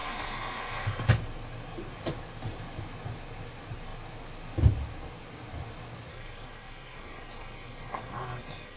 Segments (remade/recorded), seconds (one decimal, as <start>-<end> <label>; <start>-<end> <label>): 0.0-1.1 remade; 1.1-6.1 recorded; 6.1-8.8 remade